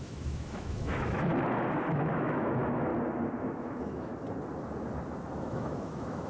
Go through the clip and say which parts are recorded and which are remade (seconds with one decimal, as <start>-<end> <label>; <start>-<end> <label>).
0.0-1.3 remade; 1.3-1.9 recorded; 1.9-2.9 remade; 2.9-3.4 recorded; 3.4-4.1 remade; 4.1-5.4 recorded; 5.4-6.3 remade